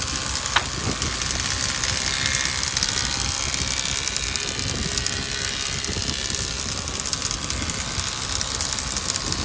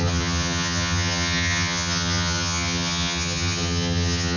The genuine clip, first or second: first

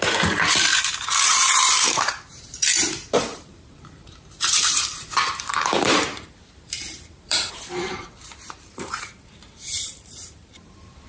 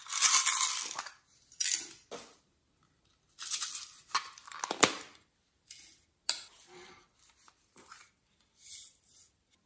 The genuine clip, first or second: second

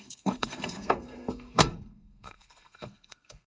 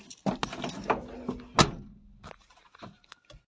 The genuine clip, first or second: second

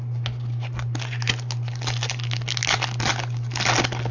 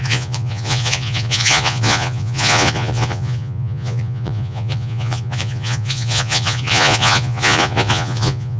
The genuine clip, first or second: first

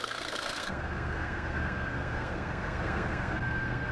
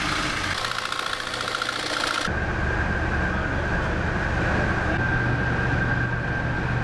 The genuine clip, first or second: second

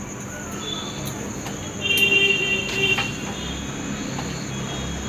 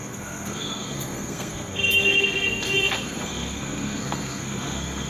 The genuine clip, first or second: first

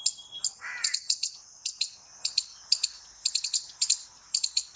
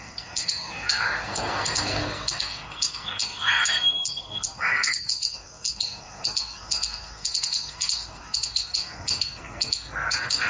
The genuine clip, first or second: first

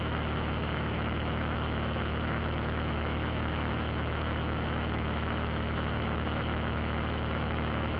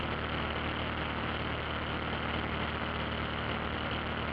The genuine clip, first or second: second